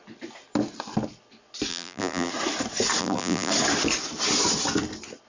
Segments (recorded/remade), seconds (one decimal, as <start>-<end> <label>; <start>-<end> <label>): 0.0-1.7 recorded; 1.7-2.3 remade; 2.3-3.0 recorded; 3.0-3.5 remade; 3.5-5.3 recorded